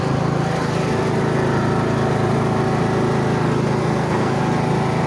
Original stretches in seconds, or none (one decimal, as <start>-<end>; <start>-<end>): 0.0-3.8; 4.4-5.1